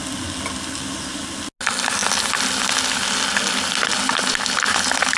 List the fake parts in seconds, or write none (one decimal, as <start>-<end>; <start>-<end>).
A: none